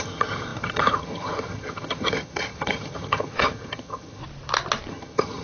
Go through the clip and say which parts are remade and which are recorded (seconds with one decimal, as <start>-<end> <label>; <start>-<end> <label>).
0.0-4.2 remade; 4.2-4.9 recorded; 4.9-5.4 remade